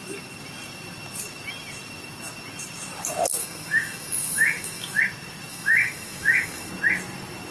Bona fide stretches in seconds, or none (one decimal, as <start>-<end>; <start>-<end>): 0.0-3.4; 5.0-5.5; 6.7-7.5